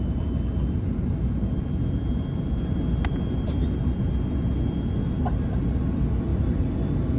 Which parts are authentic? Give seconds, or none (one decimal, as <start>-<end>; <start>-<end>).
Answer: 0.0-7.2